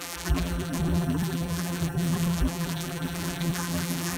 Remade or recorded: remade